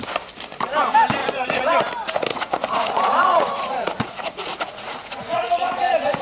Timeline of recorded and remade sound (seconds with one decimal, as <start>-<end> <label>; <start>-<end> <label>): 0.0-1.2 recorded; 1.2-1.8 remade; 1.8-2.3 recorded; 2.3-6.2 remade